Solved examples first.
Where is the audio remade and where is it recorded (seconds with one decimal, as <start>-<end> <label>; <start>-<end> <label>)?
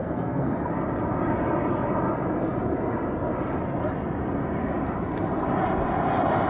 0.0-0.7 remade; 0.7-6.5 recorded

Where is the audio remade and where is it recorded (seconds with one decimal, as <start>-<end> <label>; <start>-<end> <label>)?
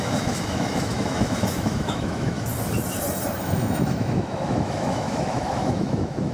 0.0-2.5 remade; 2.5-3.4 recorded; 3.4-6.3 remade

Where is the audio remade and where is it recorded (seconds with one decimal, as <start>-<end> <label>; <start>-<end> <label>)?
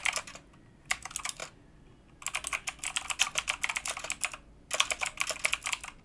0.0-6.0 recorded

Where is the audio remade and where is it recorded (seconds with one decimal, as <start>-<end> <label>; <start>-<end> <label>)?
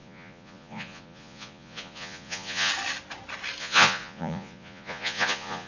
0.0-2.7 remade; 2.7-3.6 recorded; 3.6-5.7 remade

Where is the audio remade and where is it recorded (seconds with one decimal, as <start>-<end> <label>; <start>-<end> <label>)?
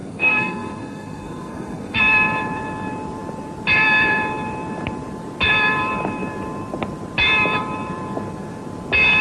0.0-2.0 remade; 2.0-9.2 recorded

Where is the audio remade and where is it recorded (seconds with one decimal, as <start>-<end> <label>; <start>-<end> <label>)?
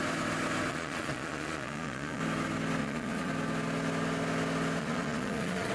0.0-0.7 recorded; 0.7-2.2 remade; 2.2-2.8 recorded; 2.8-3.3 remade; 3.3-4.8 recorded; 4.8-5.7 remade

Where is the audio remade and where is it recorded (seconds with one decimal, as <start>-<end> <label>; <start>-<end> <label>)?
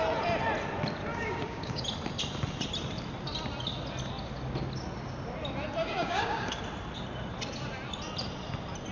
0.0-1.1 recorded; 1.1-1.8 remade; 1.8-5.8 recorded; 5.8-6.6 remade; 6.6-8.9 recorded